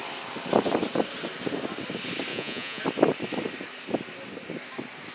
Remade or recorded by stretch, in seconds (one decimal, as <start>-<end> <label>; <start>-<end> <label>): 0.0-2.3 recorded; 2.3-2.8 remade; 2.8-5.1 recorded